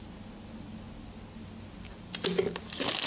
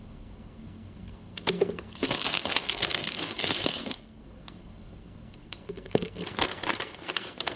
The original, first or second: first